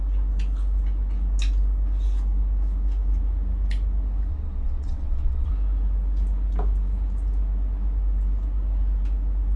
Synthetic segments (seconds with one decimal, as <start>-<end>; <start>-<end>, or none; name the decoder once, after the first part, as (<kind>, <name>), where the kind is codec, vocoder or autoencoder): 4.3-5.5 (vocoder, WaveNeXt)